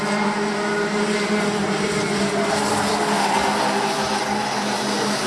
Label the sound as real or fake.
real